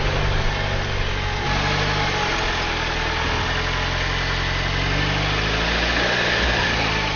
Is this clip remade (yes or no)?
no